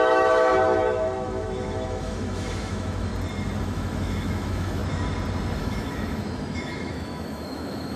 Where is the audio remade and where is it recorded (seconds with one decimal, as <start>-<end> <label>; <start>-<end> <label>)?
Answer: 0.0-3.1 remade; 3.1-3.6 recorded; 3.6-4.8 remade; 4.8-5.6 recorded; 5.6-8.0 remade